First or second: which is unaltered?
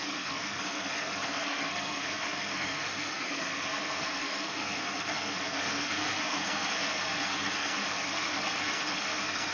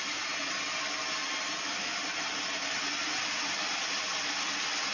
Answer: second